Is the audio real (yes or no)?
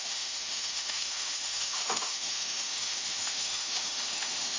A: no